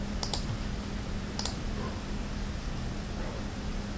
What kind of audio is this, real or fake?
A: real